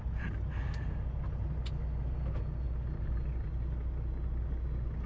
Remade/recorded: recorded